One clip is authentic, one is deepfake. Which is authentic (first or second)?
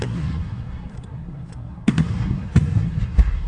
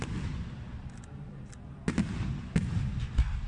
second